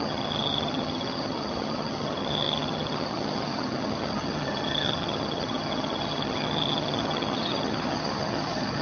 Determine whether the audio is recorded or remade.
remade